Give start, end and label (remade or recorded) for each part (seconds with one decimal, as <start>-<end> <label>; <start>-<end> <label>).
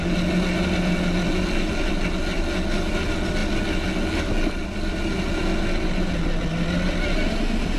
0.0-7.8 recorded